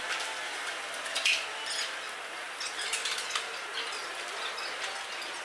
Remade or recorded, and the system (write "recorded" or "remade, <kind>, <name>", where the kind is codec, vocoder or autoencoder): recorded